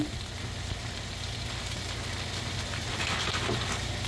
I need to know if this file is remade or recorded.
recorded